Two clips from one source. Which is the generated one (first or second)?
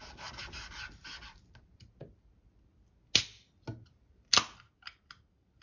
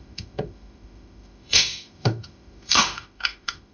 second